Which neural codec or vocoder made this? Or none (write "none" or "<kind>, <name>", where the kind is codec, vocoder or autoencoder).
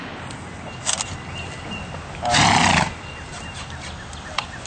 none